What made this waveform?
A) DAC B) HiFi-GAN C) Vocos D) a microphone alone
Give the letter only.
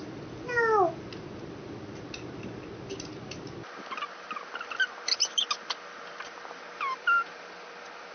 D